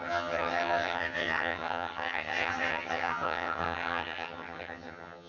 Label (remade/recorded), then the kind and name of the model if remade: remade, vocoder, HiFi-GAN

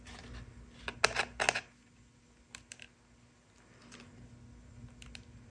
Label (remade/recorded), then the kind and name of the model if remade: recorded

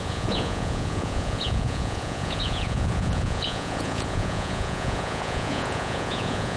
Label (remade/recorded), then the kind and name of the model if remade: remade, vocoder, Vocos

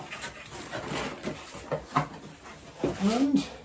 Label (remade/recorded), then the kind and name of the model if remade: recorded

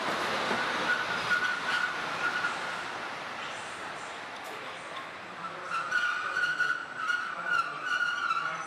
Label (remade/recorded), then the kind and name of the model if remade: recorded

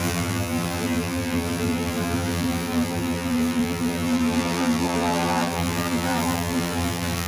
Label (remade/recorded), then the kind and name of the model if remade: remade, vocoder, BigVGAN v2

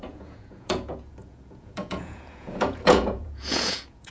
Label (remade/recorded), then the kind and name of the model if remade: remade, vocoder, Vocos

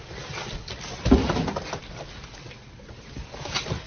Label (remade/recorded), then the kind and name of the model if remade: recorded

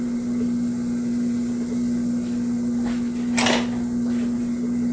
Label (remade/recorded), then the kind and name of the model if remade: recorded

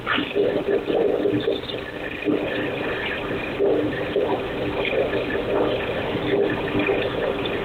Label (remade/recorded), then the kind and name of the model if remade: recorded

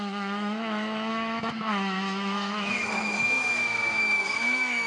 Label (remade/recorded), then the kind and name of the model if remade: remade, autoencoder, DAC-VAE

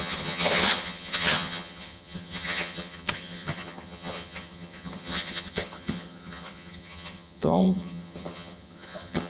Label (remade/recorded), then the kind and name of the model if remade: remade, vocoder, HiFi-GAN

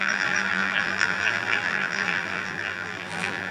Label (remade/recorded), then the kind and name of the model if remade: remade, vocoder, BigVGAN v2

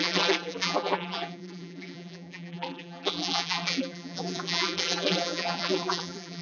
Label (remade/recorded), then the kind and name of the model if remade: remade, vocoder, BigVGAN v2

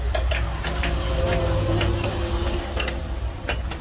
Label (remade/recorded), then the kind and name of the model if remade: recorded